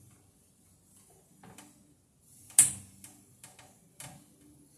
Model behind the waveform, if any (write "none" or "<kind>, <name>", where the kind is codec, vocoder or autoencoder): none